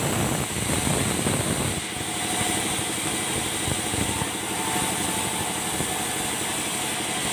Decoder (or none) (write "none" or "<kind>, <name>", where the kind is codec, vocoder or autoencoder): none